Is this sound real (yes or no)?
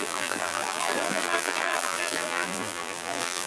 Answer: no